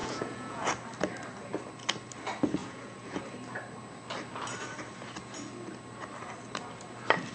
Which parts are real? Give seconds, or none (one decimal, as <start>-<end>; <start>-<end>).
0.7-2.6; 3.2-7.3